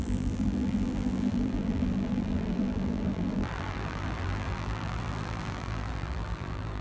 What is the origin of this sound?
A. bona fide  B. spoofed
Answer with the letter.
B